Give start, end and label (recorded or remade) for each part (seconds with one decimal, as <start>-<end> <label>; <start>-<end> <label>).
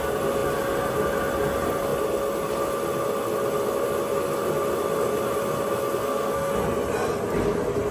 0.0-6.0 recorded; 6.0-6.5 remade; 6.5-7.9 recorded